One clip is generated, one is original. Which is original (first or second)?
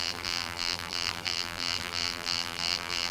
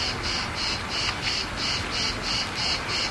second